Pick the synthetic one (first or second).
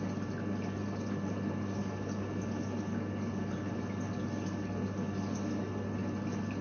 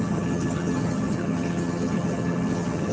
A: second